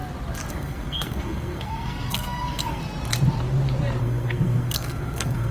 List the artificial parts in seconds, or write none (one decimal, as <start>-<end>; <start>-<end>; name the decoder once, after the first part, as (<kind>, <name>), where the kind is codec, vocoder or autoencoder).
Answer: 0.5-2.8 (codec, SNAC); 4.0-5.5

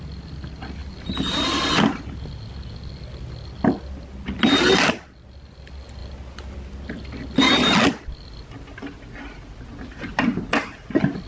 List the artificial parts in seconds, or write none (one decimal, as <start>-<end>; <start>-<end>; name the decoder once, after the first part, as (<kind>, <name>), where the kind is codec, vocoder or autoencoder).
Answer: none